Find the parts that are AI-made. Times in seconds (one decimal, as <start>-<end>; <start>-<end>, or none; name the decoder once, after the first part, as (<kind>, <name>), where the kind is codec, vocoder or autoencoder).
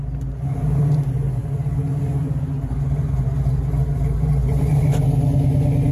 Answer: none